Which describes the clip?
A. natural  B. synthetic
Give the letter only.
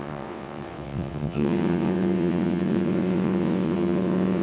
B